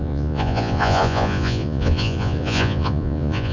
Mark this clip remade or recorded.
remade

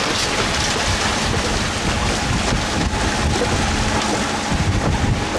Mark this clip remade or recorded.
remade